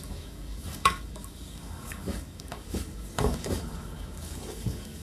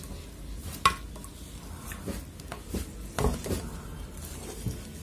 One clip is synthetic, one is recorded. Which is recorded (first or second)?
second